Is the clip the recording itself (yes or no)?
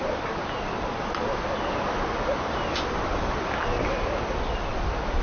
yes